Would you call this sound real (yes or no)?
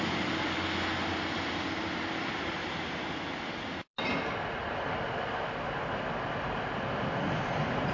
yes